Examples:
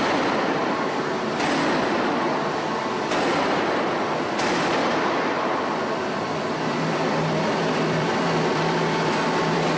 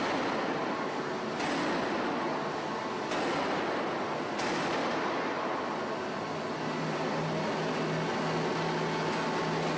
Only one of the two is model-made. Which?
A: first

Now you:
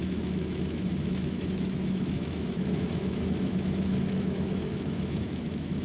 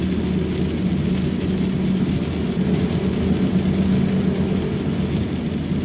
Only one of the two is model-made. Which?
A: first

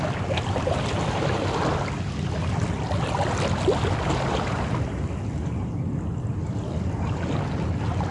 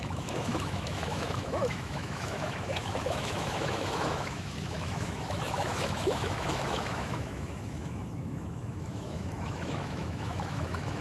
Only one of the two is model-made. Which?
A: second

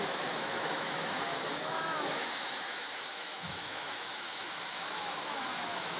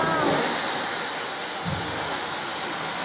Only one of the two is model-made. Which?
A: first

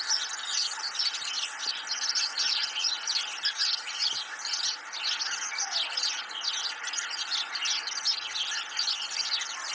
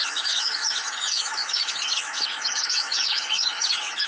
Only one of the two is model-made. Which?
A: second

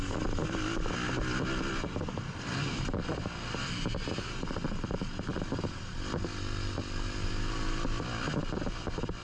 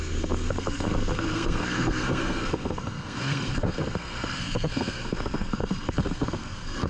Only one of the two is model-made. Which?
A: second